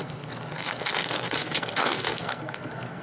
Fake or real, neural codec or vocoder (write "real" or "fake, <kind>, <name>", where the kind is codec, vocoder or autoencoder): fake, codec, SNAC